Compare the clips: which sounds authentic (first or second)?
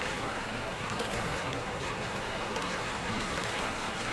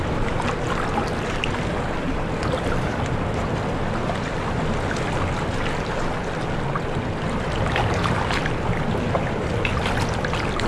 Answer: second